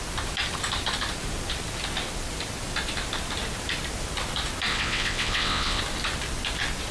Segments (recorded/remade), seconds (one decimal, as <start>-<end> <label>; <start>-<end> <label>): 0.0-4.7 recorded; 4.7-5.8 remade; 5.8-6.9 recorded